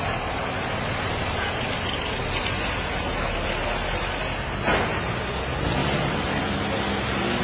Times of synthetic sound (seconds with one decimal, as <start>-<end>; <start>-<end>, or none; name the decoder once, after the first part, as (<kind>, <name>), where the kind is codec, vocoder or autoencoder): 5.8-6.4 (vocoder, BigVGAN v2)